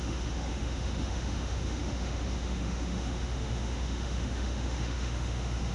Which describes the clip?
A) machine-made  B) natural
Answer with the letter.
A